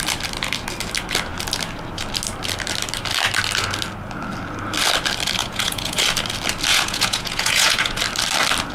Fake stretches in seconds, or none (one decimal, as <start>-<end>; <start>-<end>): 5.4-6.0; 6.7-8.0